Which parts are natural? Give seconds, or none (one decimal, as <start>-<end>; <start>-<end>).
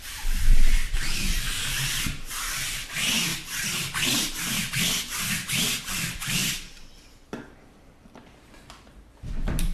3.3-5.9